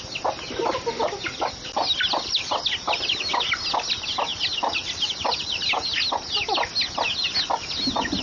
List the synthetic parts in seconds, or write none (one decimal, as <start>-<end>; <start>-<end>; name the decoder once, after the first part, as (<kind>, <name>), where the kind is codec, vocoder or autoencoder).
none